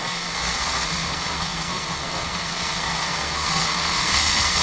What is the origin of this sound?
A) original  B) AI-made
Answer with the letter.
B